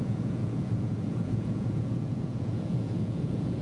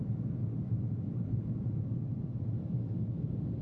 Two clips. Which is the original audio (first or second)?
second